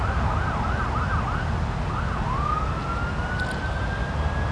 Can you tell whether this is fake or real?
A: real